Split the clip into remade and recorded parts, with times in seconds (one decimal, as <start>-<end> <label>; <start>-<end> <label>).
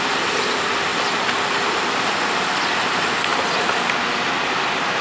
0.0-5.0 recorded